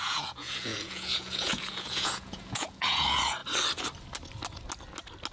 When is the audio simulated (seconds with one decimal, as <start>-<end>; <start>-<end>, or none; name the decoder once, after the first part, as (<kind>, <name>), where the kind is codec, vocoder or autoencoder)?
0.0-3.4 (vocoder, Vocos)